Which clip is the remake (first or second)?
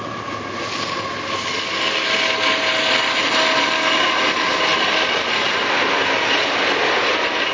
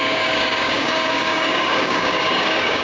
second